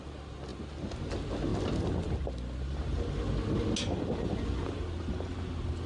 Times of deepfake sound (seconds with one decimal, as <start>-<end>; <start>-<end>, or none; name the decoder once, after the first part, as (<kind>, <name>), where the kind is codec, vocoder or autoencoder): none